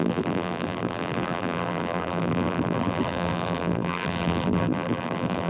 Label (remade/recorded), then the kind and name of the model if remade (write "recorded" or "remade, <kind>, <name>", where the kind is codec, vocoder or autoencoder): remade, vocoder, BigVGAN v2